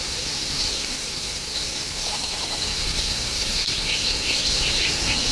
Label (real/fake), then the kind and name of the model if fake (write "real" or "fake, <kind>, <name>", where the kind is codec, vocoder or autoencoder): fake, codec, SNAC